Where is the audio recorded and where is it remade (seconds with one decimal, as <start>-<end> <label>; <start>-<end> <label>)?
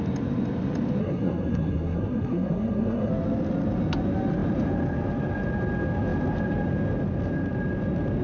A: 0.0-1.0 recorded; 1.0-3.1 remade; 3.1-8.2 recorded